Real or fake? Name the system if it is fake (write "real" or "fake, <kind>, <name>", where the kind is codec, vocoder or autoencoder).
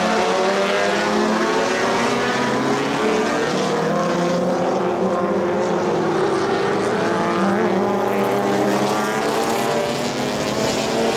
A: real